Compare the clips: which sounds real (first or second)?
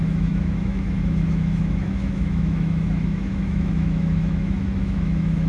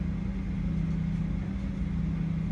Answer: second